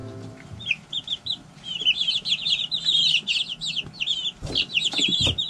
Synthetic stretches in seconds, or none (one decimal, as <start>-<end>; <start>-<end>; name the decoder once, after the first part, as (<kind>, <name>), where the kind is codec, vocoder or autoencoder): 0.0-3.3 (vocoder, BigVGAN v2)